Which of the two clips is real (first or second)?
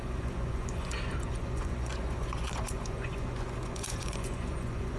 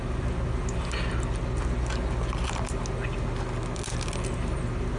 second